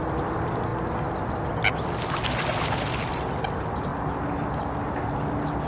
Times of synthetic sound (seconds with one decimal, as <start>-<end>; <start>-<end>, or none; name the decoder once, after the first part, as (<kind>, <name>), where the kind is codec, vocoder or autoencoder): none